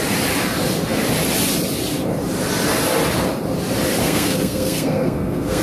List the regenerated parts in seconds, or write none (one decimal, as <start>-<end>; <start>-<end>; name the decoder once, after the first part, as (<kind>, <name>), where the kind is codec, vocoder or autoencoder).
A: 4.0-5.6 (codec, SNAC)